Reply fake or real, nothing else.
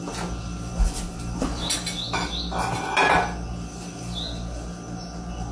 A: real